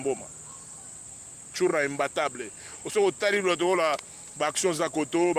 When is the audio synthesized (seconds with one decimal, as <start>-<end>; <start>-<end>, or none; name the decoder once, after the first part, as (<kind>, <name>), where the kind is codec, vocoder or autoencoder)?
0.0-1.7 (vocoder, BigVGAN v2); 4.1-5.4

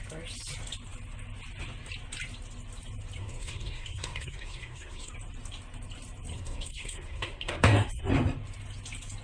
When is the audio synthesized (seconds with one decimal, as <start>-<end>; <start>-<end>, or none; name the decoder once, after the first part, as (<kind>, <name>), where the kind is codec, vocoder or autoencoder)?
3.2-5.1 (codec, SNAC); 6.3-8.1

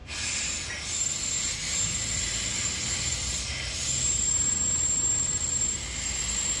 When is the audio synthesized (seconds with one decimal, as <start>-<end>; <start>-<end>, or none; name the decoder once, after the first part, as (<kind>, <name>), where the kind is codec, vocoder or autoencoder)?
none

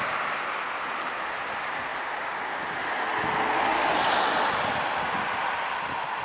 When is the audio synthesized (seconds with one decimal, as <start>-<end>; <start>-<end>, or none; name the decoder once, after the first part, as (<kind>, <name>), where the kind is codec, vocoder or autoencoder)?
3.7-4.4 (vocoder, BigVGAN v2)

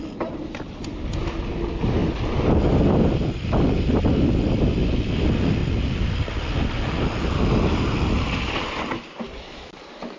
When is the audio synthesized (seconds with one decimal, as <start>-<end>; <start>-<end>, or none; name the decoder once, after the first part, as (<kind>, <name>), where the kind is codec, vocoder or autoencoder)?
none

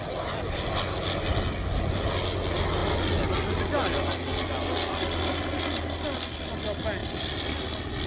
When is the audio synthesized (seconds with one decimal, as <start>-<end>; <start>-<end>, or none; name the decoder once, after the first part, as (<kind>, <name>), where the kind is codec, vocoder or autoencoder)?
7.0-8.1 (vocoder, BigVGAN v2)